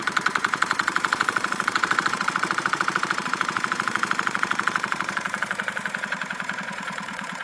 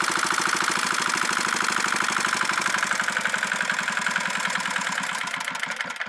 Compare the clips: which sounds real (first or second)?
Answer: second